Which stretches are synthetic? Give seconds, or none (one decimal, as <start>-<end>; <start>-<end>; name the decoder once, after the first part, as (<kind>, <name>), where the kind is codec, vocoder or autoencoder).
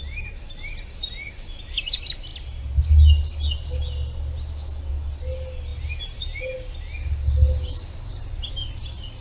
none